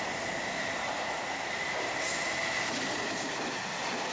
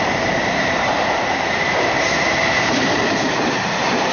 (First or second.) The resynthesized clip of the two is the second